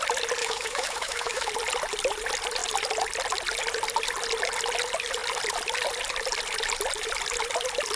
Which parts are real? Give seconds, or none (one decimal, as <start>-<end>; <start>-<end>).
0.0-0.4; 1.5-7.9